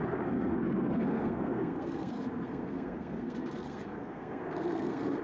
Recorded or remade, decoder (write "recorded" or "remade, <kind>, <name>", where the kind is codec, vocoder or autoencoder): remade, codec, SNAC